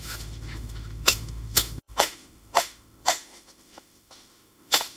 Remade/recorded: remade